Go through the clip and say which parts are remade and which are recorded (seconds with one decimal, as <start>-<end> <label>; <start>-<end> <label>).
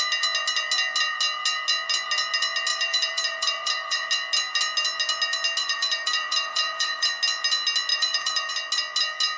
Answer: 0.0-2.7 recorded; 2.7-4.1 remade; 4.1-5.6 recorded; 5.6-7.1 remade; 7.1-7.9 recorded; 7.9-8.5 remade; 8.5-9.4 recorded